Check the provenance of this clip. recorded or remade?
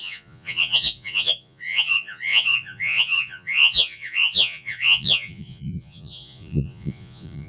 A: remade